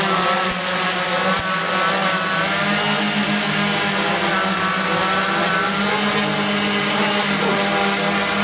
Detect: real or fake real